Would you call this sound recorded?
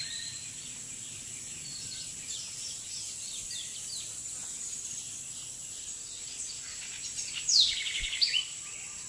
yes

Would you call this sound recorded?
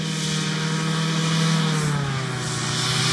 yes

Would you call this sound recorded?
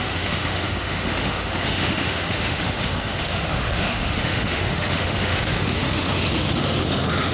no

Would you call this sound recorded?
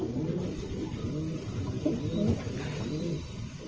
yes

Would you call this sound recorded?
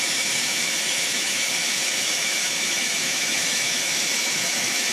no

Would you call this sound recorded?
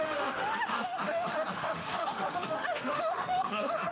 no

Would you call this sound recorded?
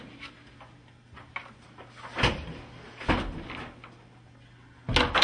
yes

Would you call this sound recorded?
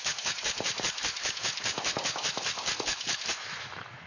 no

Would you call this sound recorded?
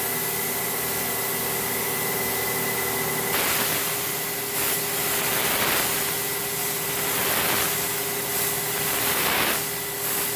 yes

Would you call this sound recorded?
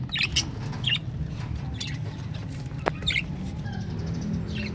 yes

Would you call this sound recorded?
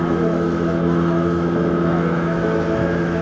no